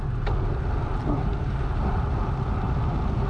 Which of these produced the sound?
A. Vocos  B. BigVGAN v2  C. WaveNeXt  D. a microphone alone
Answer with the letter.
D